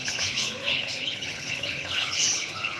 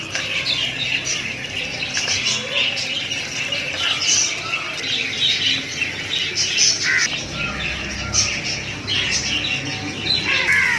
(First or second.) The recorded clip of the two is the second